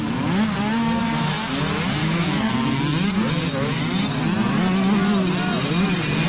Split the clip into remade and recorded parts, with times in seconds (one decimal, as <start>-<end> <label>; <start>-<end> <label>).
0.0-2.0 recorded; 2.0-2.5 remade; 2.5-6.3 recorded